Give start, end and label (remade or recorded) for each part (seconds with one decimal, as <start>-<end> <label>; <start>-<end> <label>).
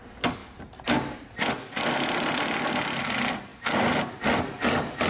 0.0-5.1 recorded